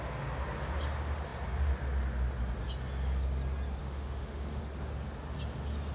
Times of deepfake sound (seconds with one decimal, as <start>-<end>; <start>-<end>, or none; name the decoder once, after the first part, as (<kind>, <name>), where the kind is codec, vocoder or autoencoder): 3.8-4.6 (autoencoder, DAC-VAE)